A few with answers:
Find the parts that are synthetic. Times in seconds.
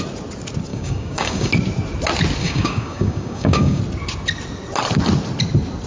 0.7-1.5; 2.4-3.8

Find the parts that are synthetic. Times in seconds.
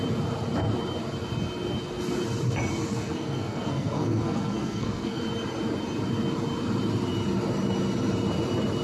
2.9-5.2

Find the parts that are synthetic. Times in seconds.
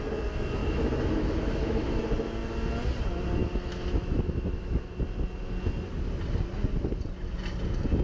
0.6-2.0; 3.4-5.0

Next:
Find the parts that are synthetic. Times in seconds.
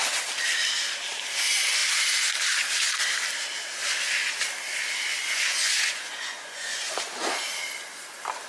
5.2-6.9